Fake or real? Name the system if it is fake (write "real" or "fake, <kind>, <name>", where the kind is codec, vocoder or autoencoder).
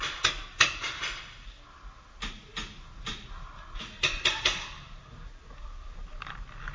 real